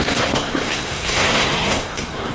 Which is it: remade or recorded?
remade